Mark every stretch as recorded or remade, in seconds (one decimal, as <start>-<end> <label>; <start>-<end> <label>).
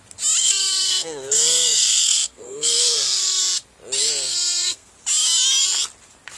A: 0.0-0.4 recorded; 0.4-3.4 remade; 3.4-4.3 recorded; 4.3-4.9 remade; 4.9-6.4 recorded